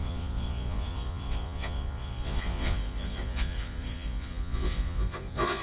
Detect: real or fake fake